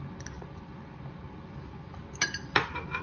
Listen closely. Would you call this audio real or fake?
real